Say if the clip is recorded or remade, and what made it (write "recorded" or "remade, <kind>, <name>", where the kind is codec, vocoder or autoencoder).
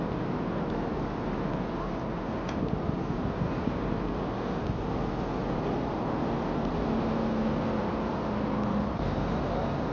recorded